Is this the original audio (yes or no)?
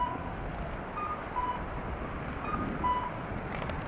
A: yes